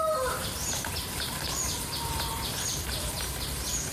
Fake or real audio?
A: fake